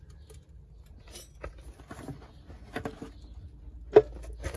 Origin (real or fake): real